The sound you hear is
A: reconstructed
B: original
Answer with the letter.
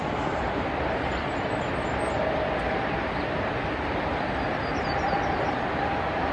B